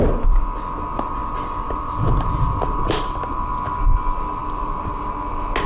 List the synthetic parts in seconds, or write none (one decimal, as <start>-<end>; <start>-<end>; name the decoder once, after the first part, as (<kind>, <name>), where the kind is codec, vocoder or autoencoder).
1.2-3.5 (vocoder, BigVGAN v2); 4.4-5.1